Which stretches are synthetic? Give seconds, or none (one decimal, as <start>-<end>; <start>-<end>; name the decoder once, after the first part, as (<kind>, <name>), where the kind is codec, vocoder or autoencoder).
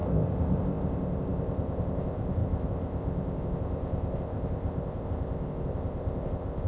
0.0-6.7 (codec, ZipCodec)